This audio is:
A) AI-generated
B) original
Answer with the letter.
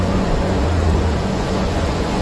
A